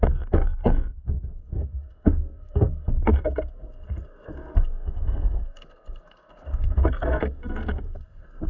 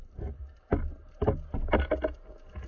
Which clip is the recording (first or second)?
second